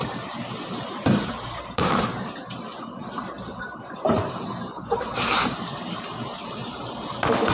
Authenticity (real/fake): fake